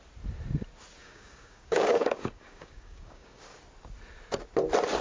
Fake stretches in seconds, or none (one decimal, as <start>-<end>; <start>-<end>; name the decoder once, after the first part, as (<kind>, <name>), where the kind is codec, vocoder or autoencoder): 1.0-3.4 (codec, DAC)